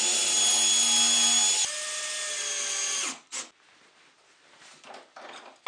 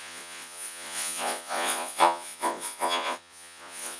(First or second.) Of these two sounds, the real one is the first